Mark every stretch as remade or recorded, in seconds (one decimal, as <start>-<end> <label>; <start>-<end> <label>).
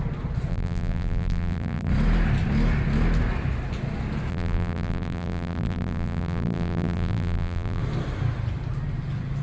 0.0-0.5 recorded; 0.5-1.9 remade; 1.9-4.3 recorded; 4.3-7.8 remade; 7.8-9.4 recorded